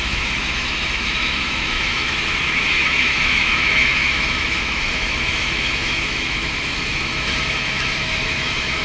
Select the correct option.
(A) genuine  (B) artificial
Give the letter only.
B